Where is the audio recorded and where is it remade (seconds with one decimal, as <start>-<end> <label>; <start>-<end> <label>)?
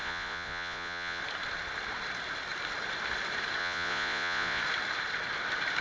0.0-1.2 remade; 1.2-3.6 recorded; 3.6-4.6 remade; 4.6-5.8 recorded